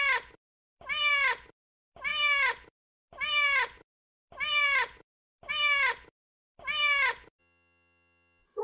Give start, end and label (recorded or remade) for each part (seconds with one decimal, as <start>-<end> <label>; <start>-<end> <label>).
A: 0.0-7.4 recorded; 7.4-8.6 remade